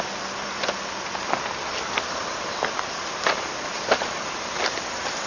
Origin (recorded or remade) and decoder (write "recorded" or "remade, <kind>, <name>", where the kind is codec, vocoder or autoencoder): recorded